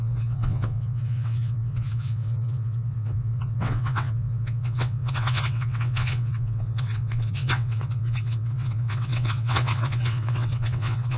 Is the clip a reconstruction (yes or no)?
yes